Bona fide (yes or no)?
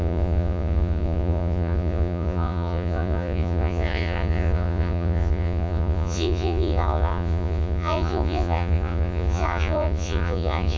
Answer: no